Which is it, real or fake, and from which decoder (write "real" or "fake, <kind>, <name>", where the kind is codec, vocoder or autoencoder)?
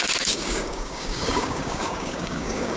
fake, codec, DAC